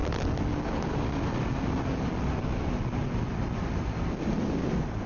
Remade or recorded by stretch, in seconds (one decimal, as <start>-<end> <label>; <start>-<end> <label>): 0.0-5.1 recorded

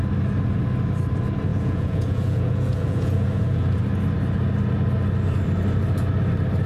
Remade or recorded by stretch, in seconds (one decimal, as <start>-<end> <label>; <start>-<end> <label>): 0.0-1.5 recorded; 1.5-3.8 remade; 3.8-6.7 recorded

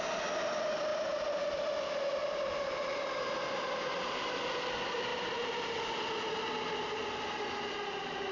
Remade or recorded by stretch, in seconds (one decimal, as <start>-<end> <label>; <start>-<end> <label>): 0.0-5.1 recorded; 5.1-5.8 remade; 5.8-8.3 recorded

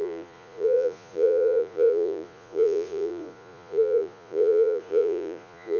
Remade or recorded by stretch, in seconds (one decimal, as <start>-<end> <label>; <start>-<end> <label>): 0.0-5.8 remade

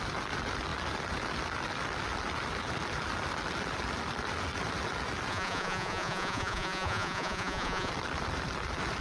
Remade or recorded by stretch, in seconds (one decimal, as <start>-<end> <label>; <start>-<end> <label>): 0.0-5.3 recorded; 5.3-7.9 remade; 7.9-9.0 recorded

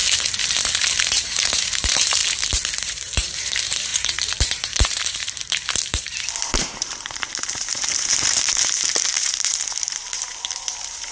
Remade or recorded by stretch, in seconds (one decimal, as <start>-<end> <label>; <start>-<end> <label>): 0.0-1.1 recorded; 1.1-2.2 remade; 2.2-2.8 recorded; 2.8-11.1 remade

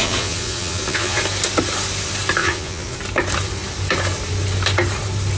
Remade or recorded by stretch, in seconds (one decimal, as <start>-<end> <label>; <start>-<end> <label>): 0.0-1.2 remade; 1.2-2.4 recorded; 2.4-3.0 remade; 3.0-5.4 recorded

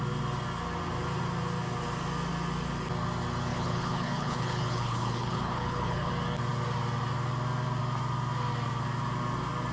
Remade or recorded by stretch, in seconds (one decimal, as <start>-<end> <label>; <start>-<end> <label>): 0.0-3.5 recorded; 3.5-6.1 remade; 6.1-9.7 recorded